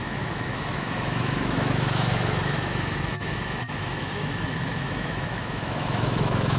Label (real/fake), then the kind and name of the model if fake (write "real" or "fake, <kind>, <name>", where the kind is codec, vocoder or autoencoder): fake, autoencoder, DAC-VAE